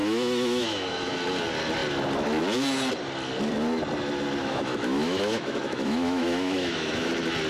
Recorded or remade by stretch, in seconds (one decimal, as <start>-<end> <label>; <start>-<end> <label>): 0.0-1.1 remade; 1.1-4.4 recorded; 4.4-7.1 remade; 7.1-7.5 recorded